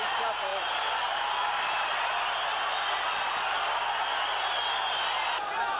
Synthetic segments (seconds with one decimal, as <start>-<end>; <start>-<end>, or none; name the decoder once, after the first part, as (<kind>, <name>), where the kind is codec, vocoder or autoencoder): none